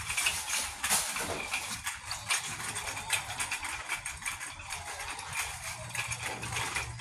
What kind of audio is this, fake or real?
real